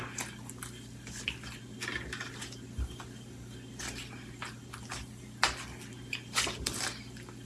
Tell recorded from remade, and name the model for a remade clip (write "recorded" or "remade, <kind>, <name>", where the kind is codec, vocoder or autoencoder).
recorded